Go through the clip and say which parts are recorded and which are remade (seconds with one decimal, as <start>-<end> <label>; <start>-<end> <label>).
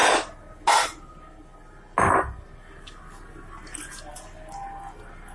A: 0.0-5.3 recorded